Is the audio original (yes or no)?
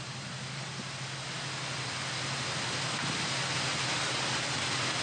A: yes